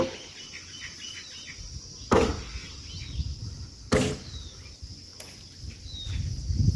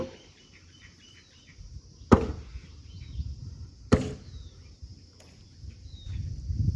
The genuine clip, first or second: first